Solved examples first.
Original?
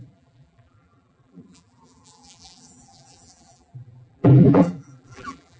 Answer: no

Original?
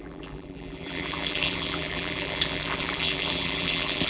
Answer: no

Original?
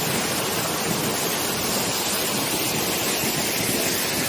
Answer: yes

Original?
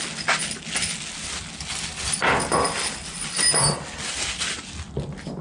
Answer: yes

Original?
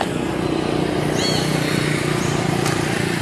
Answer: yes